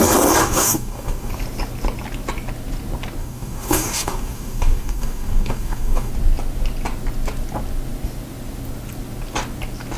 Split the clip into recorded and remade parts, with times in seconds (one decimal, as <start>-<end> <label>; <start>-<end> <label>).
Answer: 0.0-0.4 recorded; 0.4-1.3 remade; 1.3-3.2 recorded; 3.2-6.1 remade; 6.1-10.0 recorded